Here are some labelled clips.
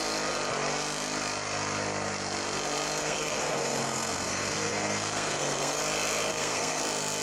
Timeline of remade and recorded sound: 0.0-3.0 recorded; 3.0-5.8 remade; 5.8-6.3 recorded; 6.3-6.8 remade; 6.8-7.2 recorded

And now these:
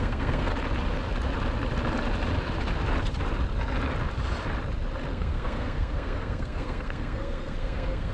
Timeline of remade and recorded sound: 0.0-0.5 remade; 0.5-5.1 recorded; 5.1-8.1 remade

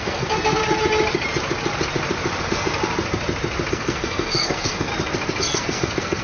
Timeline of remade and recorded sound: 0.0-0.6 remade; 0.6-2.4 recorded; 2.4-2.8 remade; 2.8-3.7 recorded; 3.7-4.9 remade; 4.9-5.4 recorded; 5.4-6.2 remade

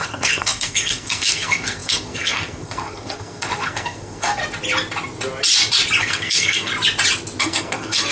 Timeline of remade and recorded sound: 0.0-4.4 remade; 4.4-6.0 recorded; 6.0-6.7 remade; 6.7-7.4 recorded; 7.4-8.1 remade